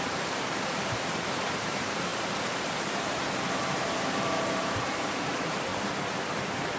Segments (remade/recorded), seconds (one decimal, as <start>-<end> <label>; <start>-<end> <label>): 0.0-2.1 remade; 2.1-3.0 recorded; 3.0-5.7 remade; 5.7-6.8 recorded